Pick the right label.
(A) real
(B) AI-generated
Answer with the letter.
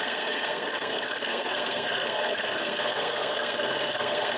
B